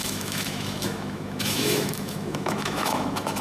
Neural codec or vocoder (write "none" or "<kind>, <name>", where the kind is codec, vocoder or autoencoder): autoencoder, DAC-VAE